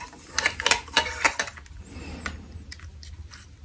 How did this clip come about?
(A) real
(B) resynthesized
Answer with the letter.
A